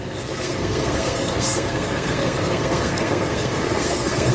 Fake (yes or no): yes